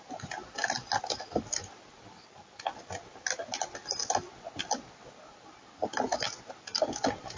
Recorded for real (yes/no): yes